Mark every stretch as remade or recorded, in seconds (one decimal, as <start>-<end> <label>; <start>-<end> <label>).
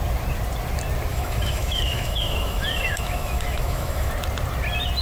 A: 0.0-1.1 recorded; 1.1-4.1 remade; 4.1-5.0 recorded